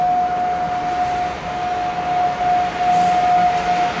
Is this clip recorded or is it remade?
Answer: recorded